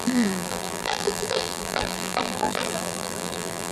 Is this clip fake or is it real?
fake